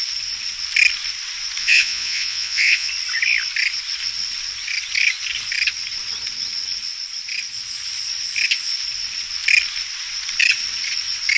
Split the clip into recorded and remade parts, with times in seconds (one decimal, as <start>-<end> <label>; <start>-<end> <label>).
0.0-1.6 recorded; 1.6-2.9 remade; 2.9-11.4 recorded